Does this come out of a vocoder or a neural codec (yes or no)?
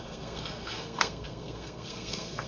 yes